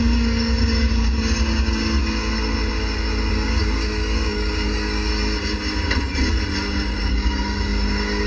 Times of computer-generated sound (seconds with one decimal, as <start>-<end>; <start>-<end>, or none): 0.0-2.0; 3.3-5.1; 7.1-8.3